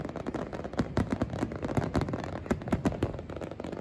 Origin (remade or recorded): recorded